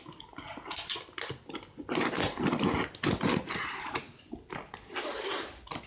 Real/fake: real